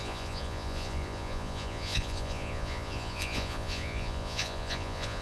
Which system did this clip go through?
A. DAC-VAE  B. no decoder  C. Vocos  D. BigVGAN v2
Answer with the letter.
C